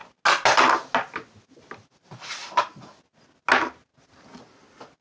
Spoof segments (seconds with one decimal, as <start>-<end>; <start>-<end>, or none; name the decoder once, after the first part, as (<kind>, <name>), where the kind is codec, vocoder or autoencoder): none